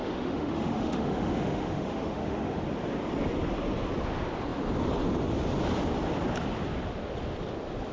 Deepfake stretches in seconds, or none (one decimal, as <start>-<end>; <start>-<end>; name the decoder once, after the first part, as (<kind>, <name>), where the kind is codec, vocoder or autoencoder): 0.0-2.6 (autoencoder, DAC-VAE)